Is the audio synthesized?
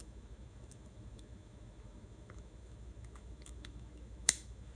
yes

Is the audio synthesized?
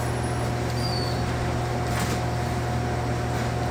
no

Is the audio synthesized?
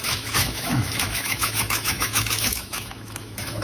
yes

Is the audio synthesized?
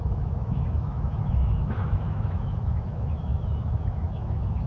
yes